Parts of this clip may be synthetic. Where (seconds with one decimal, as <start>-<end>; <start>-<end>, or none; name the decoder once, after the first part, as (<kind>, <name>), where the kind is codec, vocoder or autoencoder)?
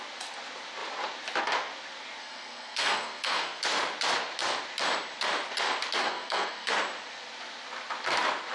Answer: 2.2-3.6 (codec, SNAC); 6.0-6.7